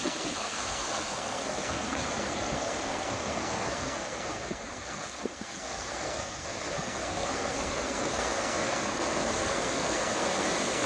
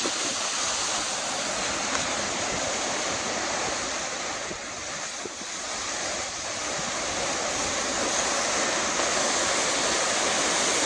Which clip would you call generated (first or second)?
first